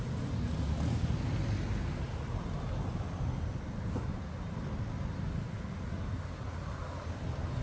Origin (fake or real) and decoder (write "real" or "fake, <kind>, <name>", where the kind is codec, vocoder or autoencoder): real